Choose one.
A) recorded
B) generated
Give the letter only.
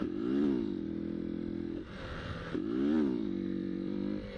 B